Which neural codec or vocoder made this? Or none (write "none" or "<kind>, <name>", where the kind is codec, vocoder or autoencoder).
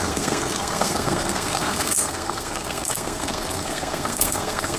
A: codec, SNAC